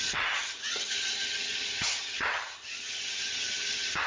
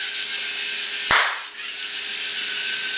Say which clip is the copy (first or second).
first